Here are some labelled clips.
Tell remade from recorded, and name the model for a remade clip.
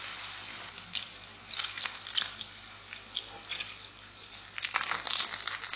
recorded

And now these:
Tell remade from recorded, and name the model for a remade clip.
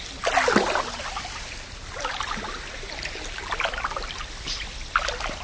recorded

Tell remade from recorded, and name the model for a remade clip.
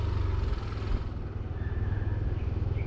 recorded